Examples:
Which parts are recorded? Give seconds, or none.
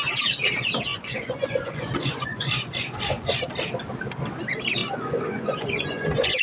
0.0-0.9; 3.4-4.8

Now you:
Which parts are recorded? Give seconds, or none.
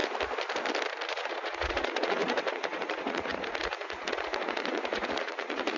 0.0-1.1